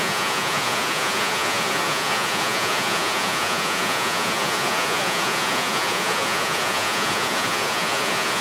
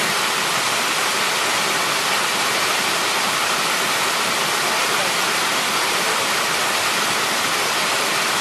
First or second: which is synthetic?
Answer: first